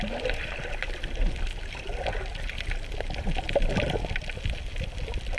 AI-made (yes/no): no